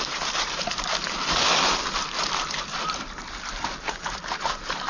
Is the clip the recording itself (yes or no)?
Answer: no